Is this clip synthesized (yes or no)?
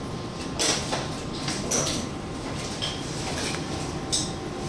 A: no